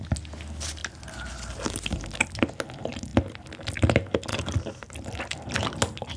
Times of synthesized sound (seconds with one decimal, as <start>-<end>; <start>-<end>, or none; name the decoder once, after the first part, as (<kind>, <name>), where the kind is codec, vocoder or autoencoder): 0.8-2.0 (vocoder, BigVGAN v2); 3.1-3.9; 4.3-5.6